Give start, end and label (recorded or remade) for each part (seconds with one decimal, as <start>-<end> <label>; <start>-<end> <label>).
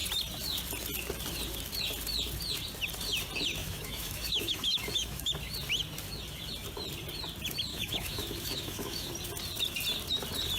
0.0-3.6 recorded; 3.6-5.3 remade; 5.3-7.7 recorded; 7.7-9.1 remade; 9.1-10.6 recorded